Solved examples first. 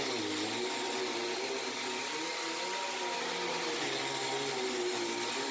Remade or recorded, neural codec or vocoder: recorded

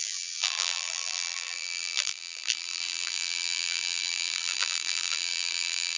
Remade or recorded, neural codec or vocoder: remade, vocoder, BigVGAN v2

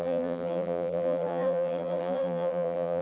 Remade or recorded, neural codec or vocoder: remade, vocoder, BigVGAN v2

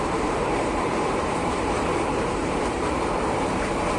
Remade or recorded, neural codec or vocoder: remade, vocoder, BigVGAN v2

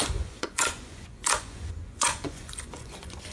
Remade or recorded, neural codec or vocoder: remade, vocoder, Vocos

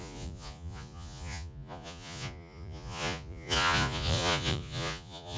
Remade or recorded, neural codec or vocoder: remade, vocoder, Vocos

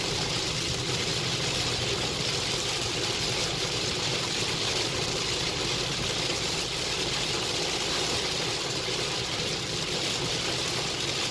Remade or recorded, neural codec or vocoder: recorded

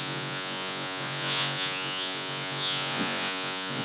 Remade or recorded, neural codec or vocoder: remade, vocoder, Vocos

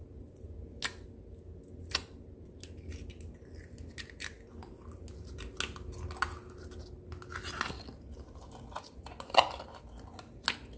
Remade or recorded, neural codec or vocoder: recorded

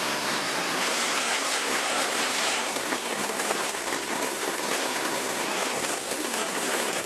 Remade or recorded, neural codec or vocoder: remade, codec, SNAC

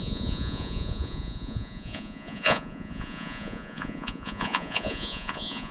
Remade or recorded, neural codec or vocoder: remade, vocoder, Vocos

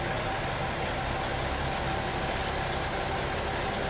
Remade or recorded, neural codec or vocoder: recorded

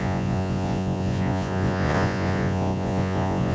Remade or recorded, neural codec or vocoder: remade, vocoder, Vocos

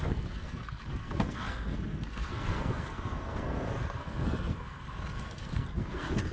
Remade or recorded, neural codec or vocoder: remade, codec, SNAC